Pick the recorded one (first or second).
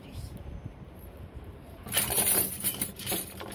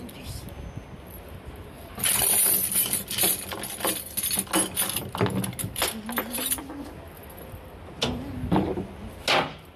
second